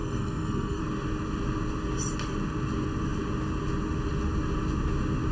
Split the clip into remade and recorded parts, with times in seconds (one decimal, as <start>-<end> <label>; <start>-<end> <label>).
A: 0.0-0.8 remade; 0.8-5.3 recorded

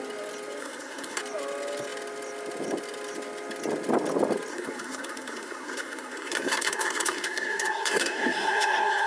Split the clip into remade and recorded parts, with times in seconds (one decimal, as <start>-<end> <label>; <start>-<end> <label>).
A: 0.0-0.6 recorded; 0.6-1.2 remade; 1.2-4.5 recorded; 4.5-9.1 remade